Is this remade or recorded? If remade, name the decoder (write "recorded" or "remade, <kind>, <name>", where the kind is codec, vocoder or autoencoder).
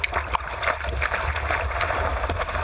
recorded